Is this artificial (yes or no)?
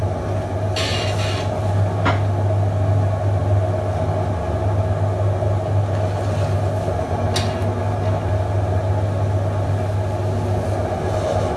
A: no